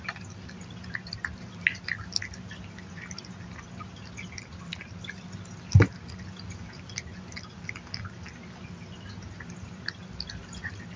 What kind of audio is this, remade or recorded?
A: recorded